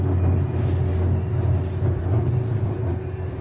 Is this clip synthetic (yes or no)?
no